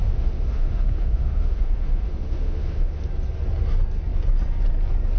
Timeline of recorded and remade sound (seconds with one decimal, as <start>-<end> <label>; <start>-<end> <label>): 0.0-3.1 remade; 3.1-5.2 recorded